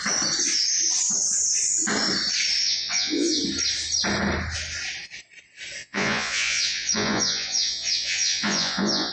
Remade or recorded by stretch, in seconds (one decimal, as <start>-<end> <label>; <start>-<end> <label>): 0.0-2.6 recorded; 2.6-3.4 remade; 3.4-5.8 recorded; 5.8-9.1 remade